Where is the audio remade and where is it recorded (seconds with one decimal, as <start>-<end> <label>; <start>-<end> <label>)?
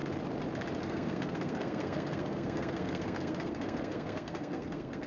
0.0-0.8 recorded; 0.8-5.1 remade